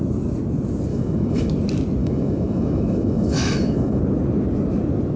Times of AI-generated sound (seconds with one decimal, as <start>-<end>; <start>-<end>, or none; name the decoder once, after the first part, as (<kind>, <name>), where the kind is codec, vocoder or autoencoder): 0.9-1.5 (autoencoder, DAC-VAE); 2.0-4.0